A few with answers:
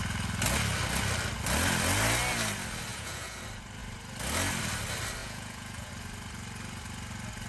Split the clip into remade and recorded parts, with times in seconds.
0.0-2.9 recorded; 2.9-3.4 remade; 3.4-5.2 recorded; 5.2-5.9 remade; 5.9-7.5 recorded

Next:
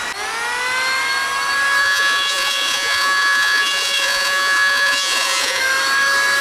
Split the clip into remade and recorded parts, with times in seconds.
0.0-1.8 recorded; 1.8-5.6 remade; 5.6-6.4 recorded

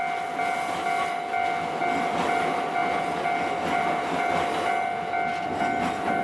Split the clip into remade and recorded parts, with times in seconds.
0.0-6.2 recorded

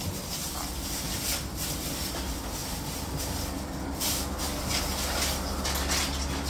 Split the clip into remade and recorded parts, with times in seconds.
0.0-0.4 recorded; 0.4-1.7 remade; 1.7-2.6 recorded; 2.6-4.4 remade; 4.4-6.5 recorded

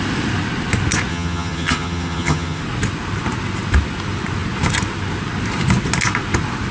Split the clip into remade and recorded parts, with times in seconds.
0.0-1.1 recorded; 1.1-2.6 remade; 2.6-6.7 recorded

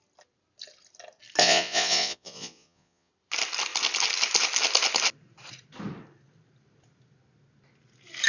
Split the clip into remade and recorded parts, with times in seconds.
0.0-1.4 recorded; 1.4-3.1 remade; 3.1-8.3 recorded

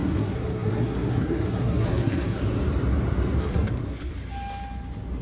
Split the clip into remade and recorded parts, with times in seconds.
0.0-2.4 remade; 2.4-3.4 recorded; 3.4-4.1 remade; 4.1-5.2 recorded

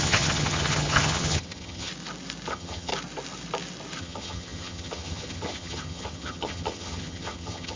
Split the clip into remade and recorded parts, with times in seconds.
0.0-1.9 remade; 1.9-2.5 recorded; 2.5-2.9 remade; 2.9-4.0 recorded; 4.0-7.8 remade